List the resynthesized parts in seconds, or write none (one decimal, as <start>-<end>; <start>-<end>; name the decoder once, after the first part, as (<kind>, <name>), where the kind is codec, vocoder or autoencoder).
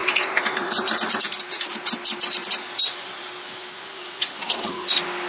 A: 0.0-1.9 (vocoder, BigVGAN v2); 2.4-3.3